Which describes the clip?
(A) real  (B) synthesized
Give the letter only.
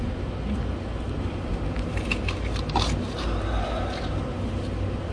A